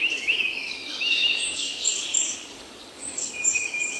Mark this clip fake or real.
fake